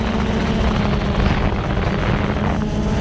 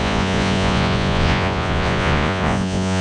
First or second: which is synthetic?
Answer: second